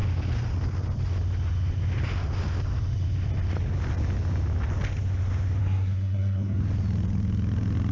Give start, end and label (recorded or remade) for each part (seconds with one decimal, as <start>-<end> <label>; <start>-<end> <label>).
0.0-5.6 recorded; 5.6-6.6 remade; 6.6-7.9 recorded